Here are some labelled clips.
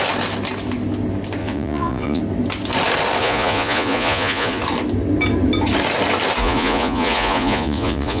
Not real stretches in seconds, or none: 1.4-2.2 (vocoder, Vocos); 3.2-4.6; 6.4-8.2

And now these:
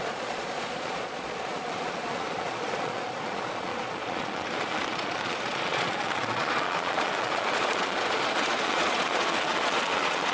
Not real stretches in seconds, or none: 0.0-10.3 (vocoder, Vocos)

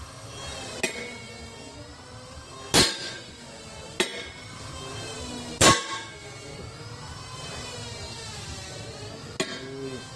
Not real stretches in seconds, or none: 3.0-3.6 (vocoder, Vocos)

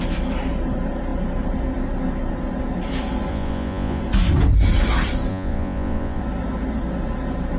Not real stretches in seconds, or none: 3.3-4.0 (vocoder, Vocos); 5.3-6.2

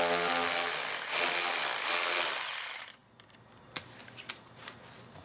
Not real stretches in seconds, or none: none

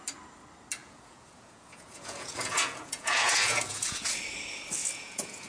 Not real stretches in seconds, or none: 0.8-4.1 (vocoder, Vocos); 4.8-5.5

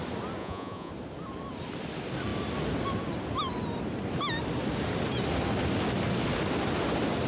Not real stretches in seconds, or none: 0.4-0.9 (vocoder, Vocos)

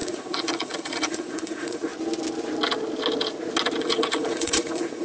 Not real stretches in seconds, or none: 0.0-1.9 (vocoder, Vocos); 3.8-5.0